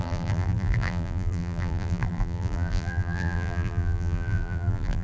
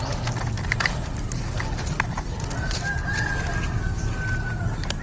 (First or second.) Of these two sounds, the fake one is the first